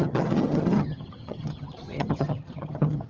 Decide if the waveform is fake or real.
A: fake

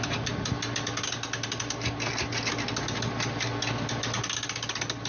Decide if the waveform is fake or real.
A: real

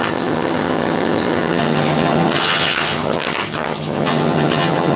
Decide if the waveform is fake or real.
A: fake